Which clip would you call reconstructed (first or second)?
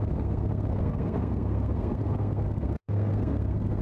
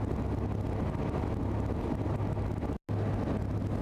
first